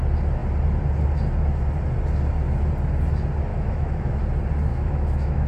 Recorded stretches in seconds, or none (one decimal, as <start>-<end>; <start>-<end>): 0.0-3.5; 4.2-4.7